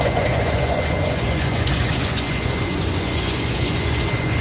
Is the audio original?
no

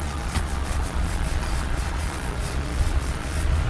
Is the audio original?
no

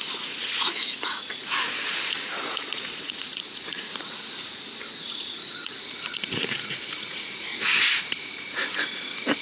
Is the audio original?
no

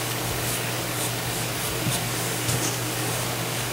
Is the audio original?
no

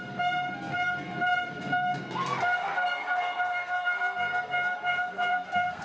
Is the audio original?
no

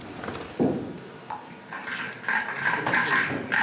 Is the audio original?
yes